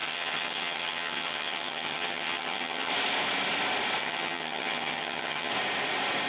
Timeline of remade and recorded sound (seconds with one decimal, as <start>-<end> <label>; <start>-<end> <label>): 0.0-2.9 remade; 2.9-4.0 recorded; 4.0-5.5 remade; 5.5-6.3 recorded